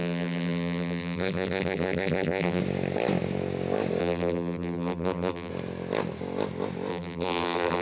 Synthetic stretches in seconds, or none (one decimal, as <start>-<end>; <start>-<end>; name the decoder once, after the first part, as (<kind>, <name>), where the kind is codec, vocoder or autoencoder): 0.0-2.6 (vocoder, BigVGAN v2); 4.0-5.5; 6.9-7.8